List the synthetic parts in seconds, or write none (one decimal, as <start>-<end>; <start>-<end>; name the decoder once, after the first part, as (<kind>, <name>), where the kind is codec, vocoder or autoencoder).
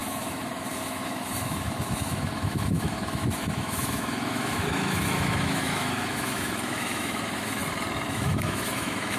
0.0-7.6 (autoencoder, DAC-VAE); 8.1-9.2